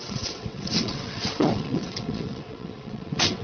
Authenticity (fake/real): fake